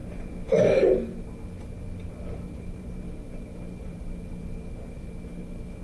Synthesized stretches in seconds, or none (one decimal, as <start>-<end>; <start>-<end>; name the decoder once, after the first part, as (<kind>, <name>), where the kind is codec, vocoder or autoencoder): 2.5-4.7 (vocoder, BigVGAN v2)